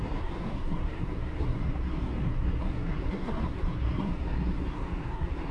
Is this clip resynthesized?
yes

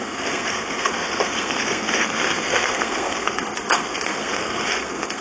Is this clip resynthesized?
yes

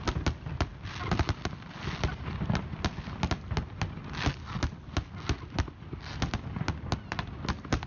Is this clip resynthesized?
no